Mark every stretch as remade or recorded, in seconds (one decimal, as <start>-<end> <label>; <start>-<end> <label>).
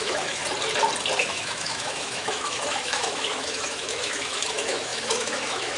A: 0.0-0.4 remade; 0.4-1.2 recorded; 1.2-5.8 remade